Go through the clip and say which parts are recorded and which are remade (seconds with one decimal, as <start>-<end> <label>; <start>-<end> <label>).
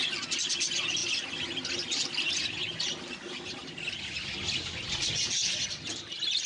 0.0-6.5 recorded